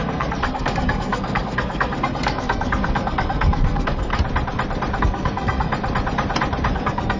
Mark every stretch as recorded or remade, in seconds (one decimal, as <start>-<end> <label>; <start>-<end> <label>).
0.0-4.1 remade; 4.1-5.0 recorded; 5.0-5.7 remade; 5.7-6.7 recorded; 6.7-7.2 remade